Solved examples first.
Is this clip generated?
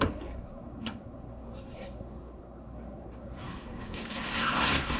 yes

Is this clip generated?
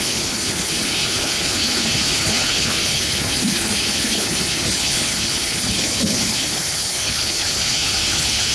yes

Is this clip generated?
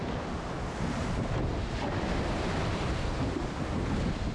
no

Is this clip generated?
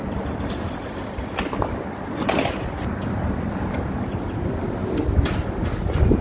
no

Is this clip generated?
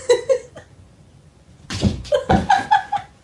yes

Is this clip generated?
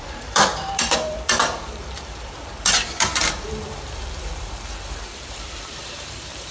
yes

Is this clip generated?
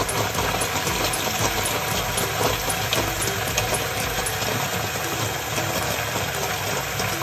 no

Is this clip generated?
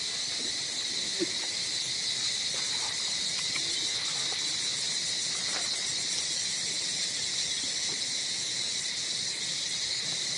no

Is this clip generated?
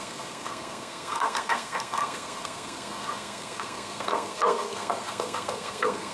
yes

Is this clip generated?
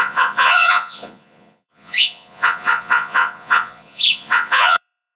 yes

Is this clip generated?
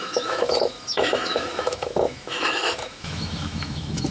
yes